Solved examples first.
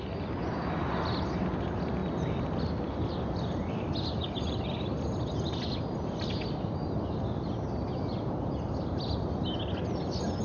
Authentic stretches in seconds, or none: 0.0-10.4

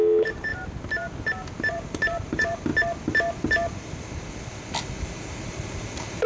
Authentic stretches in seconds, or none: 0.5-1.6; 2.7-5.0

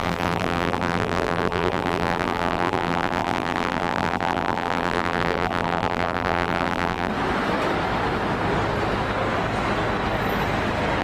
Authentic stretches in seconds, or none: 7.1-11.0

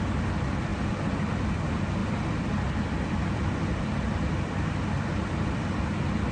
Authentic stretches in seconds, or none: 0.0-0.7; 1.4-2.0; 5.8-6.3

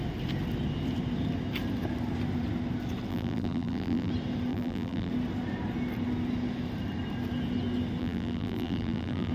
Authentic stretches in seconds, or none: 0.0-3.1; 4.1-4.5; 5.1-8.0